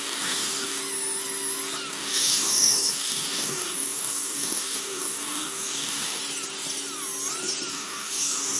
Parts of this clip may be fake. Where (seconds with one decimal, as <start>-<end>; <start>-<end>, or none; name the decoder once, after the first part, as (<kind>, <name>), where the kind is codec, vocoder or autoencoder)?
0.0-0.8 (codec, DAC); 1.9-6.2; 7.7-8.6